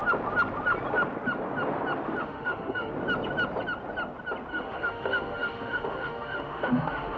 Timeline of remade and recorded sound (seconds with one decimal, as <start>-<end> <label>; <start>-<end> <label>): 0.0-2.2 recorded; 2.2-2.9 remade; 2.9-4.5 recorded; 4.5-7.2 remade